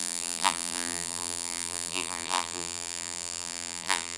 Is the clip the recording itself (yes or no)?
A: no